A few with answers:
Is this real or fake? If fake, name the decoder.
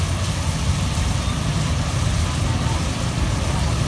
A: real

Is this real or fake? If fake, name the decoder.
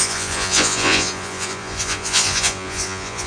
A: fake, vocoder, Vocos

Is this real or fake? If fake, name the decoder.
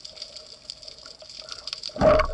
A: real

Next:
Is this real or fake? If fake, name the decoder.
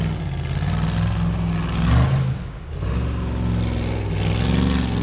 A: real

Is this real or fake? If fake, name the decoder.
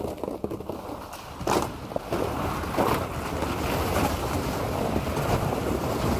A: real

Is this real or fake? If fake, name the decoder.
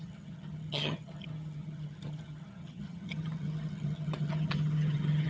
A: fake, vocoder, HiFi-GAN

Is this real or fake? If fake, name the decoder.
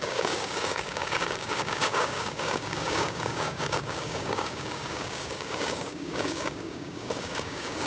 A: fake, codec, DAC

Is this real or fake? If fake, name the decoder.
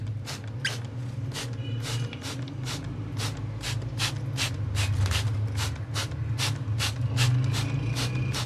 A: real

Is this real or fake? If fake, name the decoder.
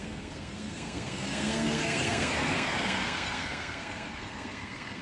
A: fake, codec, SNAC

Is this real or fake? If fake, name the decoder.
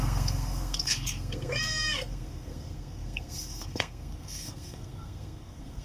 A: fake, codec, SNAC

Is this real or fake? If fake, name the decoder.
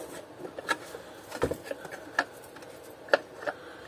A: real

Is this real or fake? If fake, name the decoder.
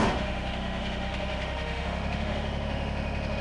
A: fake, autoencoder, DAC-VAE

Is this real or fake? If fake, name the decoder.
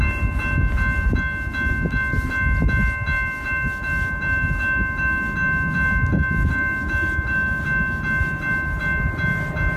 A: real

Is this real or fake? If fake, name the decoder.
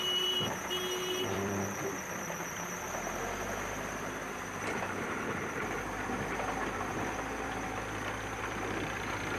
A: fake, vocoder, BigVGAN v2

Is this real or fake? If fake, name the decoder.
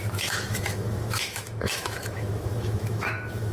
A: fake, autoencoder, DAC-VAE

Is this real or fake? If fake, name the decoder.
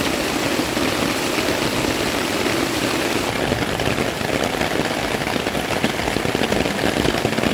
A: real